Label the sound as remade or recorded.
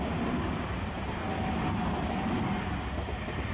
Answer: recorded